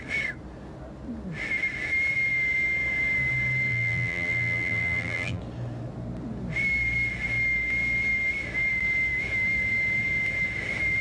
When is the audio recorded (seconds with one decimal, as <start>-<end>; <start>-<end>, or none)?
0.0-3.7; 5.4-11.0